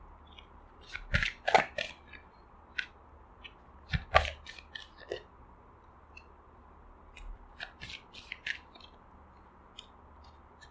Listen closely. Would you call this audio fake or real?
real